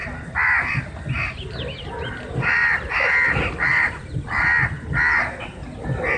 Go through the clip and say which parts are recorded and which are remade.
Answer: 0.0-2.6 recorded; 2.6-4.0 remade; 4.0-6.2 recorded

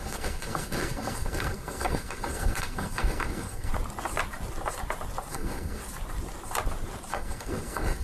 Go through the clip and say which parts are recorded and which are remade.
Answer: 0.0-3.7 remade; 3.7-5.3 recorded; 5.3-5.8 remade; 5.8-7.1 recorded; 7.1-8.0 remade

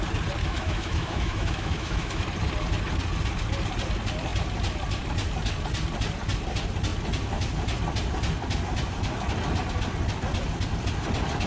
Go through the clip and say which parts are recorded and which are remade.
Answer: 0.0-0.4 recorded; 0.4-2.2 remade; 2.2-11.5 recorded

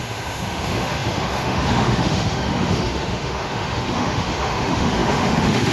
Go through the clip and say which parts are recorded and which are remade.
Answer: 0.0-5.7 remade